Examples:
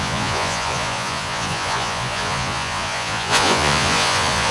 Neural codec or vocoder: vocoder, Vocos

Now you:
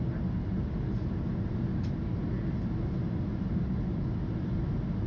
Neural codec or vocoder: none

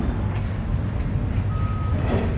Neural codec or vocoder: none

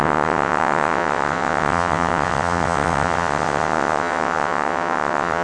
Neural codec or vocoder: vocoder, WaveNeXt